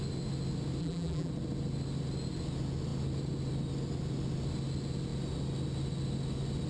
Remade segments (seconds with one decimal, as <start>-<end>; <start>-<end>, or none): 0.8-1.3